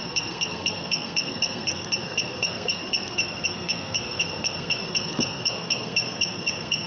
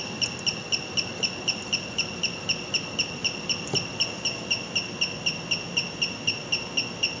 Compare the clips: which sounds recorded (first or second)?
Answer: second